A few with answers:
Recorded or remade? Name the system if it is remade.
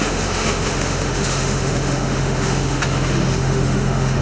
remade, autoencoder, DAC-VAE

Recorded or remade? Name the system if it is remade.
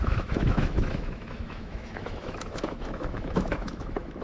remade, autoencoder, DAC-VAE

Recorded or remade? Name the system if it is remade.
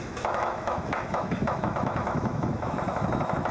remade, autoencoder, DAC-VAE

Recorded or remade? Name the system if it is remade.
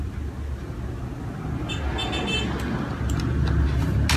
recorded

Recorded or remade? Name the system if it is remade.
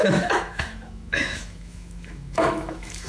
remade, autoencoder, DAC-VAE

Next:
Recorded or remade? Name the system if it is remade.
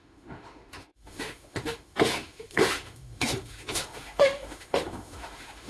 remade, autoencoder, DAC-VAE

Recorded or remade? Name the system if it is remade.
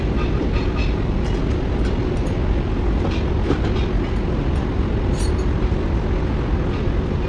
recorded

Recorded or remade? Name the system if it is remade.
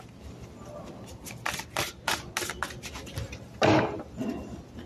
recorded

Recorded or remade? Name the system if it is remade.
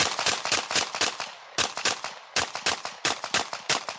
recorded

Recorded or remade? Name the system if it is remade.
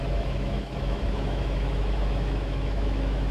remade, autoencoder, DAC-VAE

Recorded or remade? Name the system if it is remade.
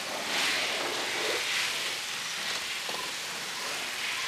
recorded